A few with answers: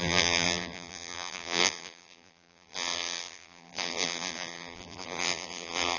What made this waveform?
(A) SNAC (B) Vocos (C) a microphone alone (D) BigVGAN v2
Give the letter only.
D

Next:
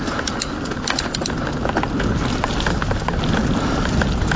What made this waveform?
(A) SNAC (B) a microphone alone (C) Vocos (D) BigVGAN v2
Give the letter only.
B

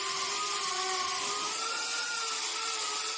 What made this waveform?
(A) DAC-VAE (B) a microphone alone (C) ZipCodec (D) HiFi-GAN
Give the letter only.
B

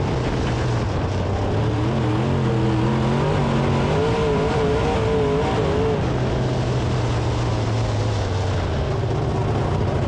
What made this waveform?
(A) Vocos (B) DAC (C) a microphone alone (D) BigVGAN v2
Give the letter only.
C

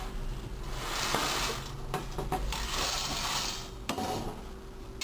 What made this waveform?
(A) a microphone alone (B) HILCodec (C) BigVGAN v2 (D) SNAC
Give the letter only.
A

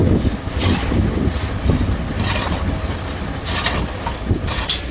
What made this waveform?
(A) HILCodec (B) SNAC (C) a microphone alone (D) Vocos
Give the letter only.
C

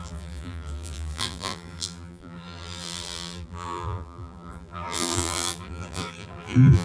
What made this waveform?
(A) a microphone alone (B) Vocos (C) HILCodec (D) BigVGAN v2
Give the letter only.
D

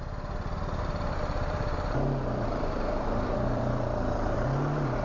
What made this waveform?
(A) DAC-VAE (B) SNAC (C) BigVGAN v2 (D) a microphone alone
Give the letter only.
C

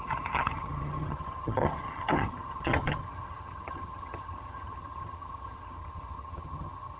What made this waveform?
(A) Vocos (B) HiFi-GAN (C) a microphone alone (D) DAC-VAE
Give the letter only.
B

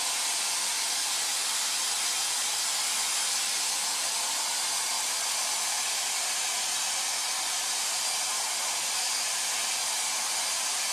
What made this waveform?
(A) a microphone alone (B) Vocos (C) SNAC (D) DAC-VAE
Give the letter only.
A